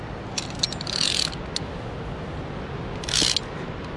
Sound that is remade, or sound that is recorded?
recorded